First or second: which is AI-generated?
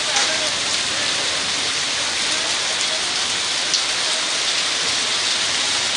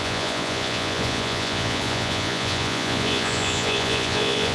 second